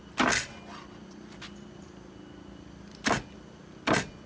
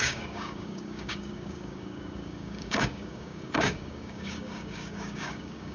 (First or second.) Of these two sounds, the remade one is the second